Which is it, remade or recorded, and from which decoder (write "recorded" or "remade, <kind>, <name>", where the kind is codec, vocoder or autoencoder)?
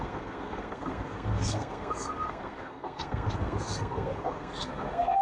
remade, codec, SNAC